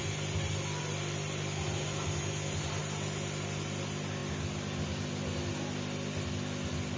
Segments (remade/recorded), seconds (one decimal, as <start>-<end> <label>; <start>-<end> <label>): 0.0-7.0 recorded